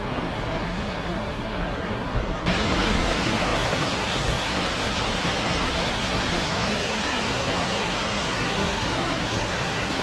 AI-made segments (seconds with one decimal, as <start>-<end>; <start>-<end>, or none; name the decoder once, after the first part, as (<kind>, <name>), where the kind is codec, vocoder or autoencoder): 0.0-10.0 (codec, SNAC)